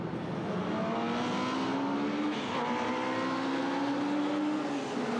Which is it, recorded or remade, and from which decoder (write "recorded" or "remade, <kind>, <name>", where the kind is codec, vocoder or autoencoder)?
recorded